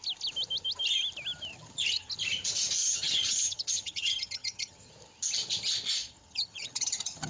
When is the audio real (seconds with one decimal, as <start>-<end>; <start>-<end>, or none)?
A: 0.0-1.5; 2.1-2.8; 4.9-6.0